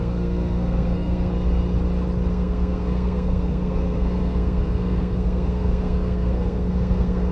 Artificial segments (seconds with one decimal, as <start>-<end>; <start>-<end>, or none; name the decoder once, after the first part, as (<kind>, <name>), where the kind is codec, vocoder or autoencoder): 0.0-1.3 (codec, SNAC); 2.3-7.3

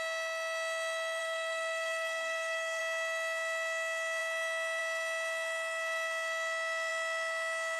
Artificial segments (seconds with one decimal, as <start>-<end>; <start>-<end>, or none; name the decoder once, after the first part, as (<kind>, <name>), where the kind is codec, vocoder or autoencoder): 1.2-2.8 (codec, SNAC)

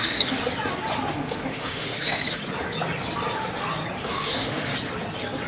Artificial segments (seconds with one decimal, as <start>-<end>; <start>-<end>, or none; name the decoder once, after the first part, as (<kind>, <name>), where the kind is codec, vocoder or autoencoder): 0.0-0.4 (autoencoder, DAC-VAE); 1.1-2.4; 4.0-4.7

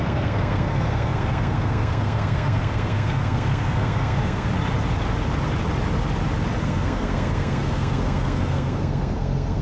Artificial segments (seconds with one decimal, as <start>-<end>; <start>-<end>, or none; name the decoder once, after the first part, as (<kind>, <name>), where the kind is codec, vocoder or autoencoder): 0.0-4.5 (codec, SNAC); 6.6-9.6